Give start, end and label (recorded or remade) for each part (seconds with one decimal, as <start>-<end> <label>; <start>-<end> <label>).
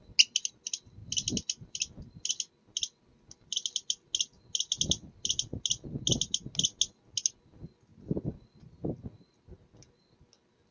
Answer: 0.0-10.7 recorded